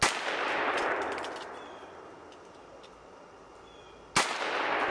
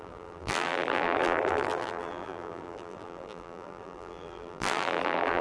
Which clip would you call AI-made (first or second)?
second